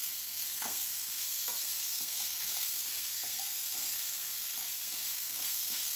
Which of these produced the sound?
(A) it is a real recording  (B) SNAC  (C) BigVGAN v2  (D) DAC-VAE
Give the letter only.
B